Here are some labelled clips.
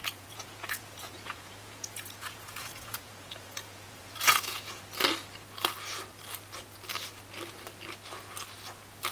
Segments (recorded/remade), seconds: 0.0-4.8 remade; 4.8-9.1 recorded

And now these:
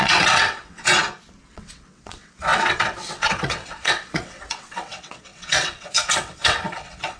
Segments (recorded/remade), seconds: 0.0-0.9 remade; 0.9-1.4 recorded; 1.4-7.2 remade

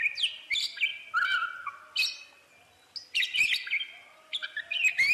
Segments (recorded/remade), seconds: 0.0-5.1 recorded